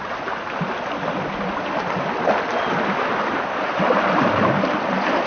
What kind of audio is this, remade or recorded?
recorded